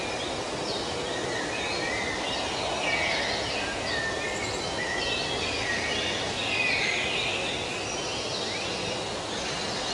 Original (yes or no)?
yes